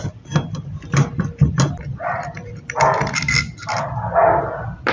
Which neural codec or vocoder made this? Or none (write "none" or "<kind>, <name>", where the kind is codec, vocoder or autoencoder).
none